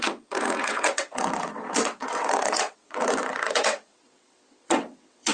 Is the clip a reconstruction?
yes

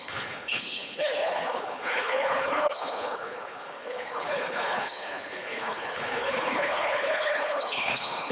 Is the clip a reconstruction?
yes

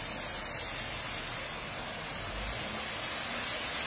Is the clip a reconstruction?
no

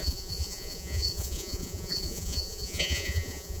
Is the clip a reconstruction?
yes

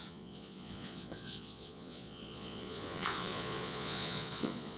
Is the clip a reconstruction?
yes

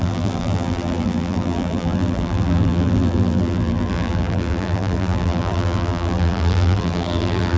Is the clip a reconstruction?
yes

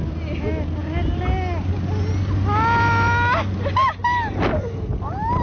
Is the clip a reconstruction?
no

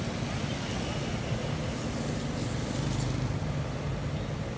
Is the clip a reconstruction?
no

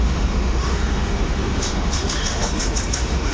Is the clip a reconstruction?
yes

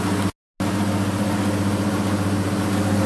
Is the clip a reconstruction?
no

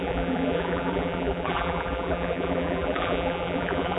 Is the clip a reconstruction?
yes